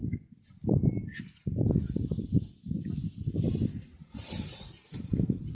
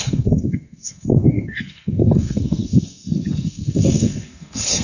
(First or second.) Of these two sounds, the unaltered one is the first